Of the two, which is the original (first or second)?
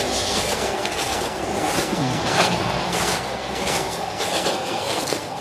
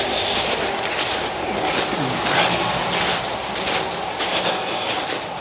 second